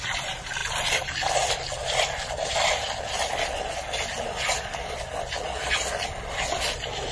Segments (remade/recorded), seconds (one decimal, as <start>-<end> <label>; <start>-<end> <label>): 0.0-7.1 recorded